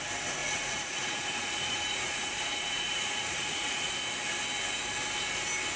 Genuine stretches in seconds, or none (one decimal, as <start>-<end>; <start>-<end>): 0.0-0.4; 3.9-5.8